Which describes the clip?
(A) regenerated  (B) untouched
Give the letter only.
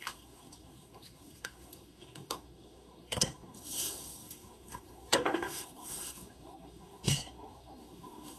A